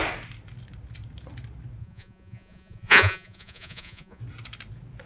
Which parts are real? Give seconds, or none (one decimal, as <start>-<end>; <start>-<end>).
0.0-1.8; 4.2-5.1